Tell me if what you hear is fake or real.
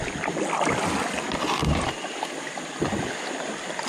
real